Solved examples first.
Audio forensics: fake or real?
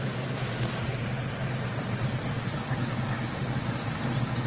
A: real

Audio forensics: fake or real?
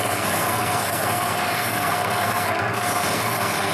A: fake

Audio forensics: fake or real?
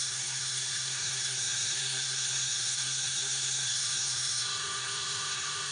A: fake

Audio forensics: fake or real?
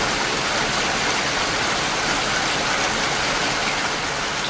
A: real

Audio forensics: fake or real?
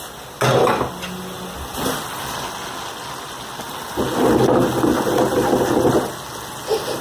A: real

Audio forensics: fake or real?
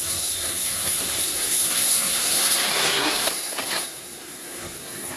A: fake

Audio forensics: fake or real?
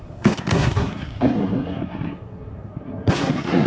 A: fake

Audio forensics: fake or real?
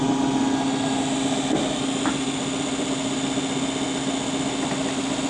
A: real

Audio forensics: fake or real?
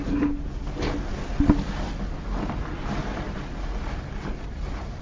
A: real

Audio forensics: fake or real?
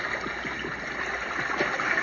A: real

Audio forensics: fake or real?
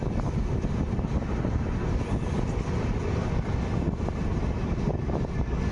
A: real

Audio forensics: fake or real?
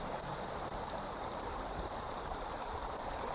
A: fake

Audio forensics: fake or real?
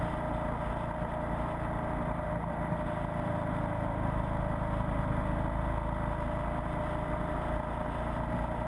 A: real